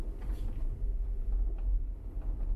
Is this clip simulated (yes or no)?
no